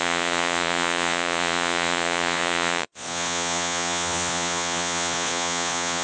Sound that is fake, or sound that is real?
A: fake